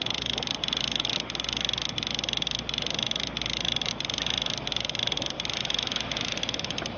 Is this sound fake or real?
real